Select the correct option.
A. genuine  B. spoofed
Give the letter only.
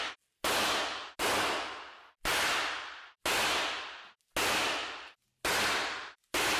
A